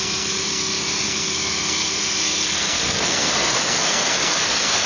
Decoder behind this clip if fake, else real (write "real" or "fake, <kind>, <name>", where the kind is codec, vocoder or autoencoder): fake, codec, SNAC